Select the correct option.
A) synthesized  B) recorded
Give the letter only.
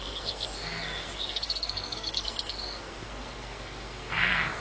A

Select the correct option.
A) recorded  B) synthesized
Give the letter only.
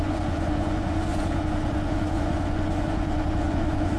B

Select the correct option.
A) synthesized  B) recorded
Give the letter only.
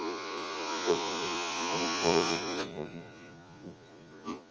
A